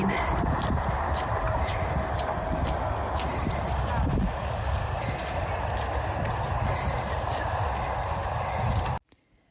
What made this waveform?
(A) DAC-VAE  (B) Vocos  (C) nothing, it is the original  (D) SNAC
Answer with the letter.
C